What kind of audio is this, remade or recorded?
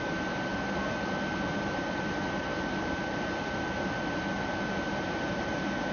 recorded